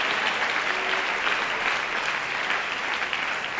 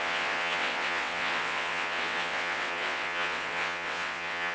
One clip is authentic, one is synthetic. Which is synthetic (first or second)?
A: second